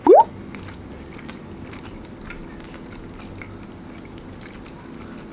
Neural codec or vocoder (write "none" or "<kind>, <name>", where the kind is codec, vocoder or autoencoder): none